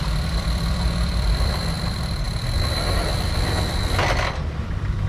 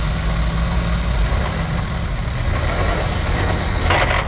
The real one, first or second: second